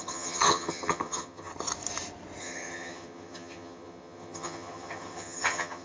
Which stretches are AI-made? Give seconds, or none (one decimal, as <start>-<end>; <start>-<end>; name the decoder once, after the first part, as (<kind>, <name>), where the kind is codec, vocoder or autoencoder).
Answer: 0.0-1.5 (vocoder, HiFi-GAN); 2.4-5.8